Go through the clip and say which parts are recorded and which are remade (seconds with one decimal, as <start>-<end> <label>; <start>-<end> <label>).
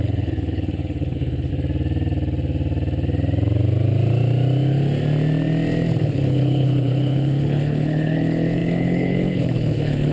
0.0-1.5 remade; 1.5-6.0 recorded; 6.0-10.1 remade